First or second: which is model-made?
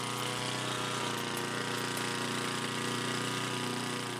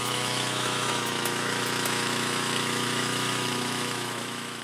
second